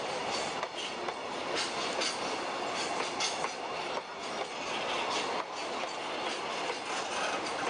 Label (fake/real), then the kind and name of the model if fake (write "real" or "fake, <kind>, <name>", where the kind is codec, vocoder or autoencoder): real